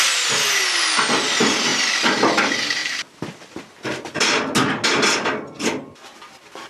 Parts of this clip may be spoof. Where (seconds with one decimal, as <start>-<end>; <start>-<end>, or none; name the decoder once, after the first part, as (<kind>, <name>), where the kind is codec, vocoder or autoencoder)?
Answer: 2.8-3.6 (vocoder, BigVGAN v2)